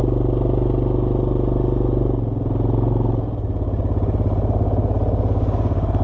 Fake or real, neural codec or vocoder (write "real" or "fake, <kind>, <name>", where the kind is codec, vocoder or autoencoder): real